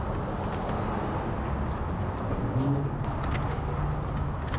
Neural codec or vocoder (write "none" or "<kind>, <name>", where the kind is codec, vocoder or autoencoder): none